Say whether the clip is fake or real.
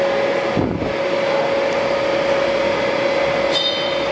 real